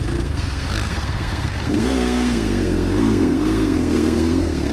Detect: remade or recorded remade